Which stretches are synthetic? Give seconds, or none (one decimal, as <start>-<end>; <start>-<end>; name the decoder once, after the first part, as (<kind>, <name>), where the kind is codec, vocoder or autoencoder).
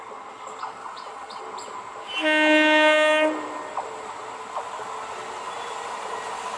0.8-1.4 (vocoder, WaveNeXt)